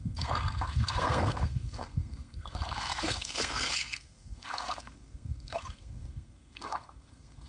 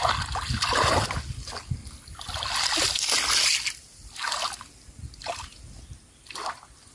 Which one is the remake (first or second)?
first